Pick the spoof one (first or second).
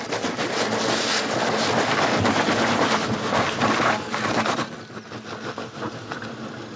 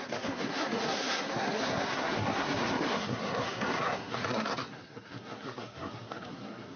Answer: second